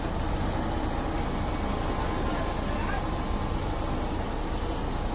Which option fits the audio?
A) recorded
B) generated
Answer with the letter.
A